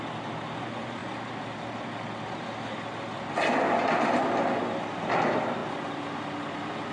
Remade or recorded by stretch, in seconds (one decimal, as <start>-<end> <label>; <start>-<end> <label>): 0.0-6.9 recorded